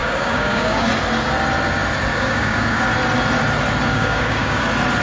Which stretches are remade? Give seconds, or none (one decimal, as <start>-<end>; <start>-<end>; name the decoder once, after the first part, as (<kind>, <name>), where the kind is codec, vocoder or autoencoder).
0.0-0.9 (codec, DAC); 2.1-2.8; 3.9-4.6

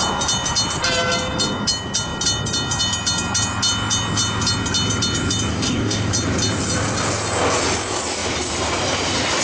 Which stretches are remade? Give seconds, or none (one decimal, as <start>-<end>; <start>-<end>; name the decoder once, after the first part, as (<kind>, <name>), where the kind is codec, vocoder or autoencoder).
5.5-6.1 (codec, DAC)

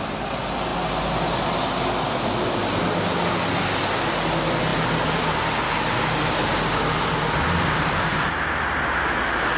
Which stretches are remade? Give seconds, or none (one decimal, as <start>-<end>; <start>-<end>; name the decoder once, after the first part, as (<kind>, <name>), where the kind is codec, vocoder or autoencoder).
none